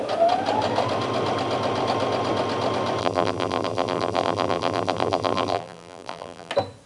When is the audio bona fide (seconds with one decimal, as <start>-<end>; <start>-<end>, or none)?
0.0-3.0; 6.5-6.9